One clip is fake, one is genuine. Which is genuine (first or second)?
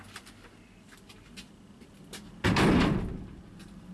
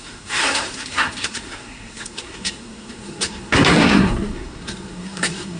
first